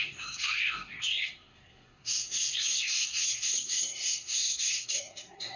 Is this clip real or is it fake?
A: fake